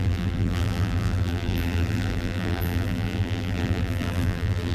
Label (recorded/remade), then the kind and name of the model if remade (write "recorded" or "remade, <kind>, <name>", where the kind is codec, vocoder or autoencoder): remade, vocoder, BigVGAN v2